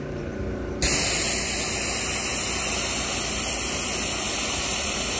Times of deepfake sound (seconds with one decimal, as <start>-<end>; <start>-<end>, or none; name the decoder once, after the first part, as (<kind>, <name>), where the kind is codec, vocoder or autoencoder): none